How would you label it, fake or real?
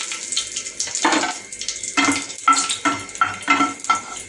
real